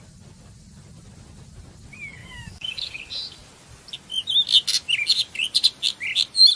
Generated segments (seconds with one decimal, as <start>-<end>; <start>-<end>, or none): 2.2-2.9

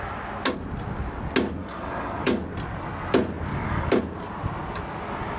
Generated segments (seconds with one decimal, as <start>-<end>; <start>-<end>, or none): 1.6-2.4; 3.5-4.0

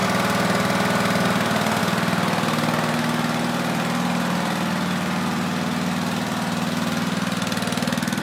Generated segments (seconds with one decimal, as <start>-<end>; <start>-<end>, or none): none

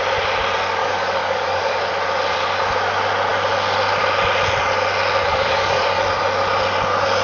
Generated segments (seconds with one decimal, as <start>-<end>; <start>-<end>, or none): 0.8-1.9; 5.3-6.0